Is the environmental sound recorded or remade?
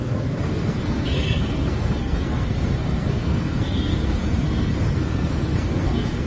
remade